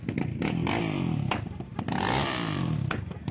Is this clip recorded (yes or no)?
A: yes